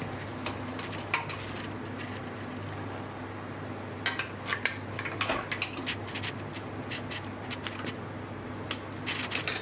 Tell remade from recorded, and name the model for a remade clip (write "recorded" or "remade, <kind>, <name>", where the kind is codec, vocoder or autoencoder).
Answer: recorded